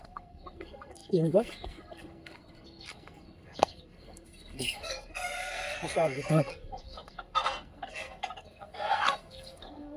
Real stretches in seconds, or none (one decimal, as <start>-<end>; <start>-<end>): none